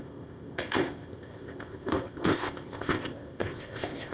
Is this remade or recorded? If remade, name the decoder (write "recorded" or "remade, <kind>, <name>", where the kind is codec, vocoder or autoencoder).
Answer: remade, codec, ZipCodec